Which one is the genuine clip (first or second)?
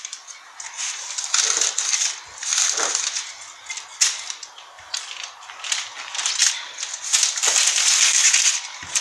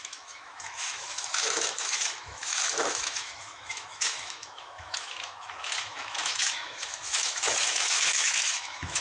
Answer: first